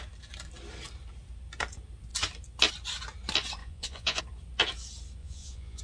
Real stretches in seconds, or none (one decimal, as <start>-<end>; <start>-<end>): 0.0-3.6; 4.2-5.2